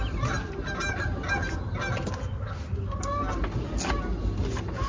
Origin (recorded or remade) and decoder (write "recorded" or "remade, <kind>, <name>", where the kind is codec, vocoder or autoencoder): recorded